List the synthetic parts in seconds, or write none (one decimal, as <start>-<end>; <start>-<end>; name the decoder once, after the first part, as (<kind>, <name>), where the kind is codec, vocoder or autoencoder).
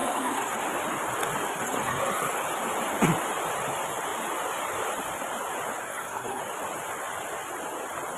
0.0-0.6 (codec, SNAC); 1.5-2.4; 5.8-6.4